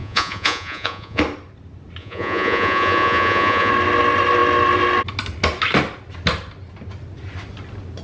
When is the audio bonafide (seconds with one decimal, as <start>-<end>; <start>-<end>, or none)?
1.2-2.0; 3.7-8.0

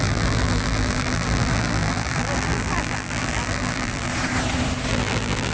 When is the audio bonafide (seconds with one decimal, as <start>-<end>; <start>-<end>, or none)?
4.1-4.9

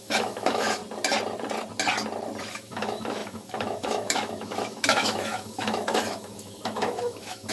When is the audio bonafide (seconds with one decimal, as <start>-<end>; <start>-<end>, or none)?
0.8-2.5